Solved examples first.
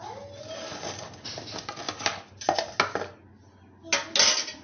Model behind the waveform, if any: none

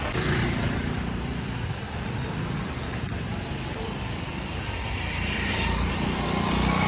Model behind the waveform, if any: vocoder, BigVGAN v2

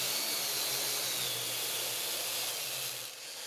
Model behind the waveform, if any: none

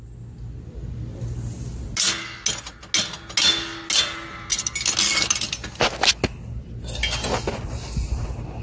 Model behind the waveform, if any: none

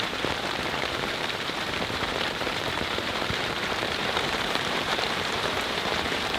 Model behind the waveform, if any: vocoder, BigVGAN v2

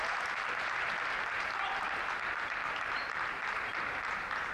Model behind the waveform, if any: vocoder, BigVGAN v2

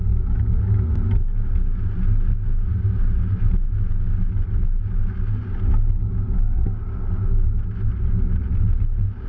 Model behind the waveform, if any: none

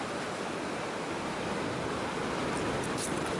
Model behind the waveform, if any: none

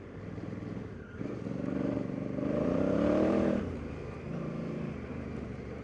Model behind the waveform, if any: vocoder, BigVGAN v2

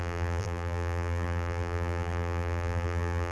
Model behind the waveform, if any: vocoder, BigVGAN v2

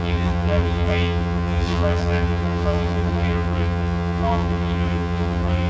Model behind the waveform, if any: vocoder, BigVGAN v2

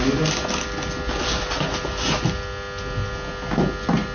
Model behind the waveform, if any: none